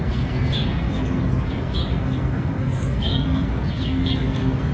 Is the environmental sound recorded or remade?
remade